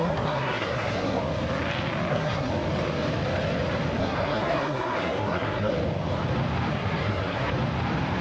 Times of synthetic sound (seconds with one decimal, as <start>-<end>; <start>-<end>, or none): 0.0-1.2; 2.1-2.5; 4.0-5.7; 6.7-7.4

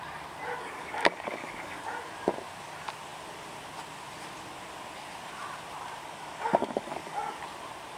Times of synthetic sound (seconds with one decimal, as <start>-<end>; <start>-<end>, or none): 0.6-1.8; 6.0-7.4

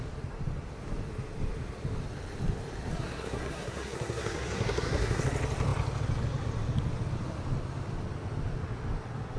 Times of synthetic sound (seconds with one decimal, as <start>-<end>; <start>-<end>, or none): 2.9-5.2

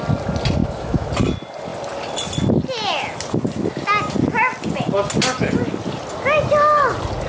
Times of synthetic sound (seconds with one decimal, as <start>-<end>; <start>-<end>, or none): 0.6-1.1

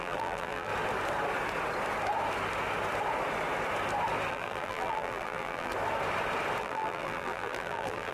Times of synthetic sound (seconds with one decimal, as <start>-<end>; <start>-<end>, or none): 0.0-0.7; 4.3-5.7; 6.6-8.1

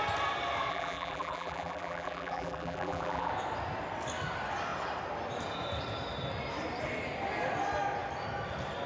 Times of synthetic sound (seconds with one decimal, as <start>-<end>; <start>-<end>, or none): 0.7-3.3

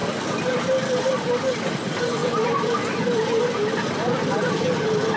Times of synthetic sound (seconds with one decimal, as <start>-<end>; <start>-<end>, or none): none

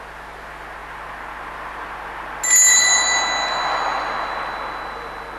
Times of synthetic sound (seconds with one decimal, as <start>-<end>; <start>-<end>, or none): none